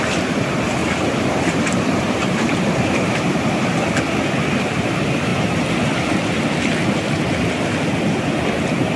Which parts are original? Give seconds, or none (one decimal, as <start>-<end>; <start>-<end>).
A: 0.0-0.8; 3.4-9.0